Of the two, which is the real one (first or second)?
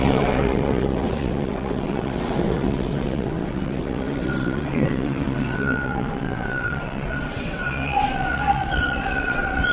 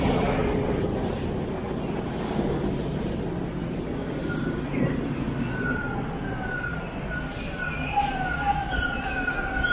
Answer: second